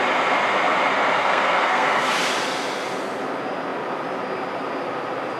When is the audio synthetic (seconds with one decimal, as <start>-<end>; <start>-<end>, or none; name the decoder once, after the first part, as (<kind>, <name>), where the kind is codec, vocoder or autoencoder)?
1.2-2.1 (codec, SNAC)

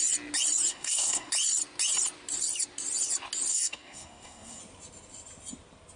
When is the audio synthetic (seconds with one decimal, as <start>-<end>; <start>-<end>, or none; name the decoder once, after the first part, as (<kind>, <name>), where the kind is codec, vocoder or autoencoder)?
0.7-1.3 (codec, SNAC); 3.5-4.6